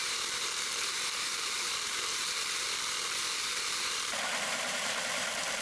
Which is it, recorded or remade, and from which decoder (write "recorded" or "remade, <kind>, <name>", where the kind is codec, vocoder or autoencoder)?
remade, vocoder, BigVGAN v2